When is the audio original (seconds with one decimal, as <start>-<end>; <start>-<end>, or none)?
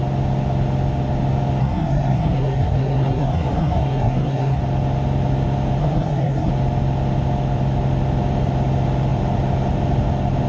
0.0-1.6; 4.6-5.8; 6.5-10.5